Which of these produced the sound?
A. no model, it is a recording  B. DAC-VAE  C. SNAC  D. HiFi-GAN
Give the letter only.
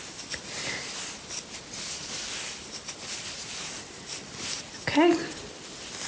A